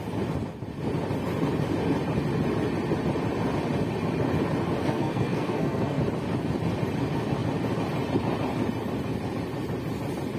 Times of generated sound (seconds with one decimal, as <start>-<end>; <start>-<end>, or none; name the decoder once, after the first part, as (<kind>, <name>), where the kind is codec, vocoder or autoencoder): 4.8-6.0 (codec, SNAC)